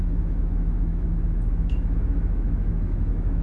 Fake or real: fake